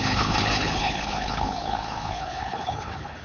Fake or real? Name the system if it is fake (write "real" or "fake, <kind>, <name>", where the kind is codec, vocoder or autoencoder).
fake, codec, HILCodec